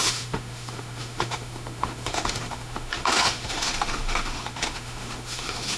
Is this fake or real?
fake